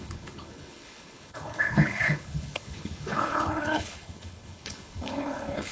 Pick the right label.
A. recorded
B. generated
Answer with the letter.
B